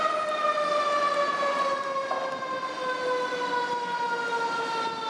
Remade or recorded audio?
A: recorded